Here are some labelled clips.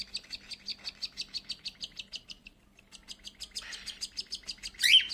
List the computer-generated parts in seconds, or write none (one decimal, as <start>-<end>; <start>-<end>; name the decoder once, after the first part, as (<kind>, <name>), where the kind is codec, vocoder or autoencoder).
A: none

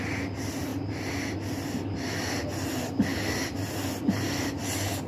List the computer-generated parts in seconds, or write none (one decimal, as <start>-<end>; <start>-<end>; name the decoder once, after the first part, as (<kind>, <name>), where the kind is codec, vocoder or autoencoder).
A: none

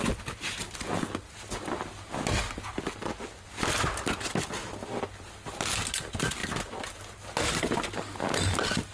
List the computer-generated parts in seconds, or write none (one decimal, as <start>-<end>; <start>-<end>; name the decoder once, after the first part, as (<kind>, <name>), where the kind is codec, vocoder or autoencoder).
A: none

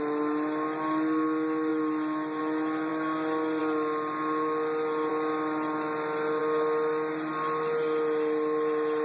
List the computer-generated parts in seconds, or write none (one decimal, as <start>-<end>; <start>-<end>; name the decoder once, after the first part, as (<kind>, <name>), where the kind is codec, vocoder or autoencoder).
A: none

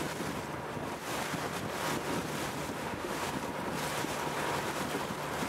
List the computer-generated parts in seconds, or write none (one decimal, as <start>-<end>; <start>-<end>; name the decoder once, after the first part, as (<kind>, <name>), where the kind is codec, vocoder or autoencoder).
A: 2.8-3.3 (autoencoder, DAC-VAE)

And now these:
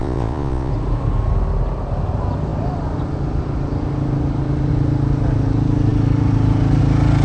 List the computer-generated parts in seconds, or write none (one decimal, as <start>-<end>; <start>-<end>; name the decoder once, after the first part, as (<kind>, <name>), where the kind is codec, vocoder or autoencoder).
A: 0.0-0.7 (vocoder, Vocos)

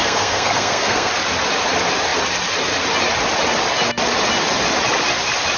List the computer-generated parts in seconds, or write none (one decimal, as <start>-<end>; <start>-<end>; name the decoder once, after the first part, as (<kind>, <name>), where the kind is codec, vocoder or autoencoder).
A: 0.0-1.1 (codec, SNAC)

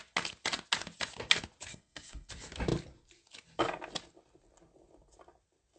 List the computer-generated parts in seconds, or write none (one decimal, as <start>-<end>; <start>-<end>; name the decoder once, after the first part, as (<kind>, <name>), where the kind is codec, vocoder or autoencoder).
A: 1.7-2.3 (codec, SNAC)